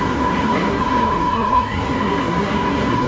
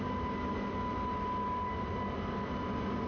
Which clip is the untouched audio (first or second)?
second